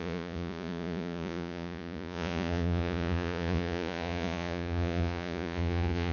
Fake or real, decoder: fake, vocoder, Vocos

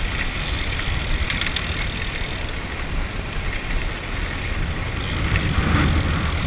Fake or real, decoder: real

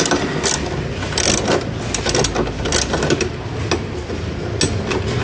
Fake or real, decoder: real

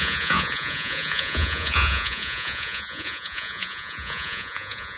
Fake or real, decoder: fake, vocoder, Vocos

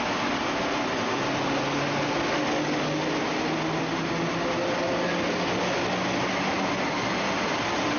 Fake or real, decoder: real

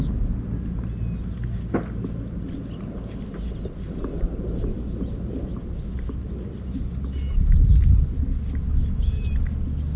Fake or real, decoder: real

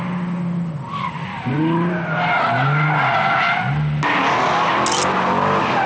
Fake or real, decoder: real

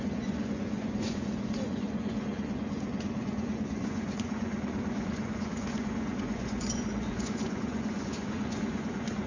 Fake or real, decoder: fake, vocoder, Vocos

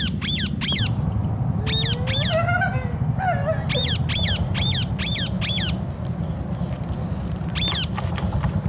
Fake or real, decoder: real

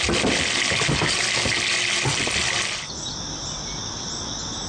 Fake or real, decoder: real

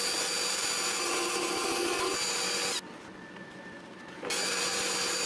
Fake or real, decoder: real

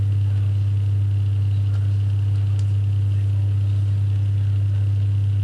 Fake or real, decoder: real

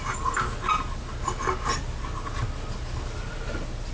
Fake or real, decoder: real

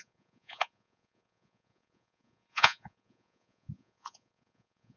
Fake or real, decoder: fake, vocoder, Vocos